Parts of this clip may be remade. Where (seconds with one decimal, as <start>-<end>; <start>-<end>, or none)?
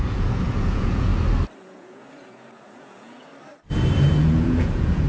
0.0-1.1; 1.6-3.3; 4.1-5.1